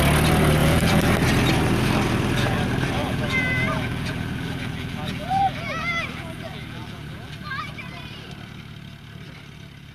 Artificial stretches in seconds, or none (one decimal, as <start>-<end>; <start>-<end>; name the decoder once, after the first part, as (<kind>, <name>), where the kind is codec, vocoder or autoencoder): 0.6-1.1 (vocoder, BigVGAN v2); 3.0-7.7